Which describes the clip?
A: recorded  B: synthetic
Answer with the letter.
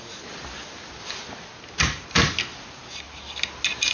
A